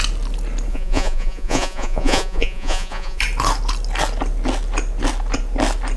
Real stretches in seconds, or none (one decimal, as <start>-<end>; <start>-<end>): 0.0-0.7; 3.2-6.0